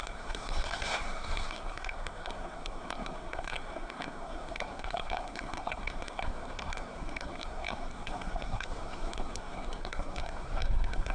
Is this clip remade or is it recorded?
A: remade